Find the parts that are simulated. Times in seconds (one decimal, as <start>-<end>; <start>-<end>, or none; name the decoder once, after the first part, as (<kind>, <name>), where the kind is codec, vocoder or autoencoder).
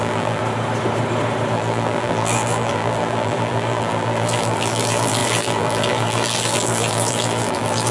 0.0-0.4 (vocoder, BigVGAN v2); 1.5-7.9